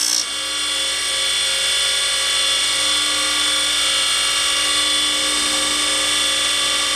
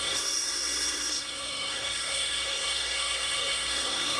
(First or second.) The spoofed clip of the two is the second